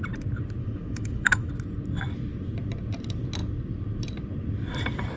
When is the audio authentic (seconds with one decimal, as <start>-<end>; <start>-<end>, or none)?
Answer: 0.0-0.6; 1.5-5.2